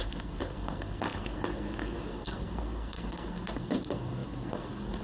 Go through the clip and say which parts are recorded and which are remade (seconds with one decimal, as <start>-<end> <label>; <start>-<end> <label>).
0.0-5.0 remade